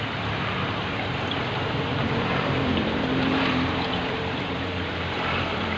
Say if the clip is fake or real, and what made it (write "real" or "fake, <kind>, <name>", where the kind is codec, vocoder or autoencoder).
fake, vocoder, BigVGAN v2